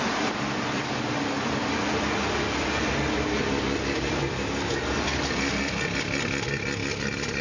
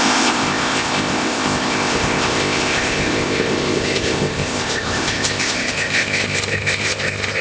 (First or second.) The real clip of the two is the first